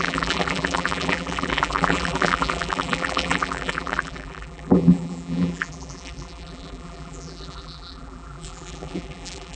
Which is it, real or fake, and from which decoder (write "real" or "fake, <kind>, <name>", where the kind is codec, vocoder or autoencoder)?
fake, vocoder, BigVGAN v2